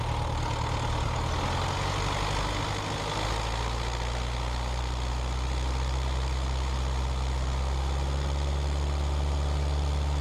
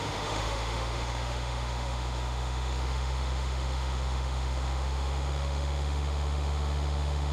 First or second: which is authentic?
first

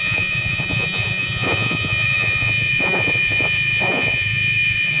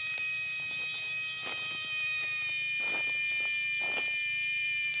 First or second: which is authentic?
second